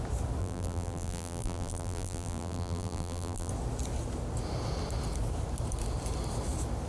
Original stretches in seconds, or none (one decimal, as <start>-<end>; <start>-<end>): 0.0-0.4; 3.5-6.9